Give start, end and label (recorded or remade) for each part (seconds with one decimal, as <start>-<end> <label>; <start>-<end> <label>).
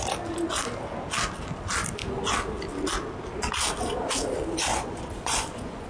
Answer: 0.0-4.7 recorded; 4.7-5.9 remade